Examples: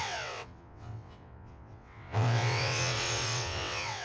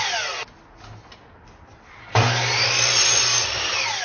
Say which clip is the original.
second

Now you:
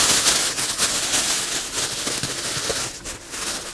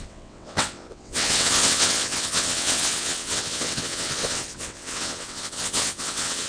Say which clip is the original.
first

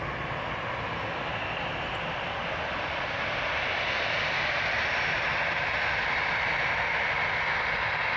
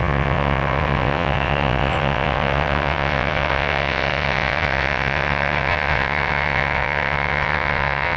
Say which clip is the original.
first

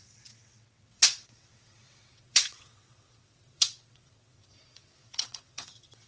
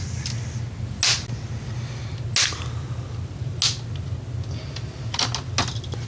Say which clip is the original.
second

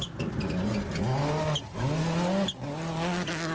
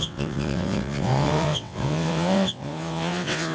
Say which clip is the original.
first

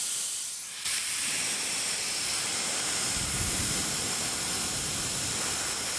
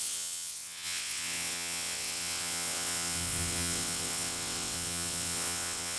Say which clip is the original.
first